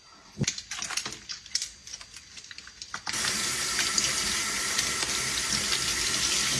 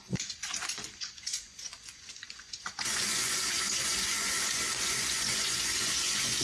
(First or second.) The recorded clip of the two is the first